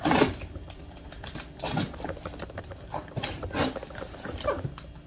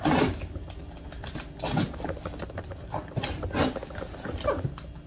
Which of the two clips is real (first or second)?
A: second